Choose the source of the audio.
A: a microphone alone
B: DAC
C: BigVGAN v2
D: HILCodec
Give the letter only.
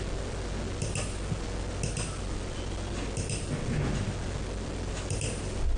A